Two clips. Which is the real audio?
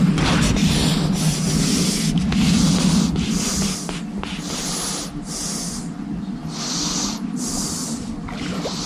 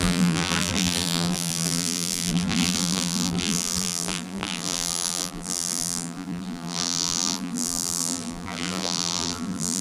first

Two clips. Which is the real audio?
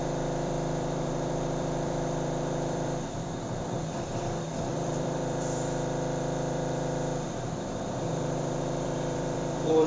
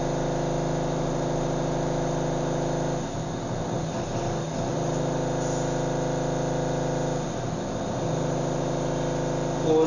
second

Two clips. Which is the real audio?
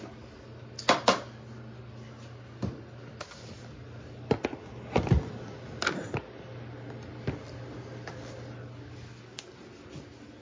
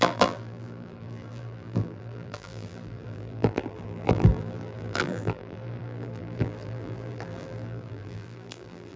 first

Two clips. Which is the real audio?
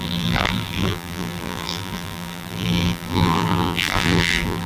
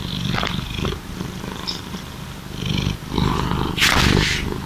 second